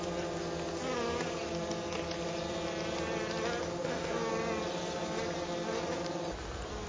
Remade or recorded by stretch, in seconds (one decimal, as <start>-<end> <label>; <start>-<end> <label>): 0.0-3.8 recorded; 3.8-4.3 remade; 4.3-6.9 recorded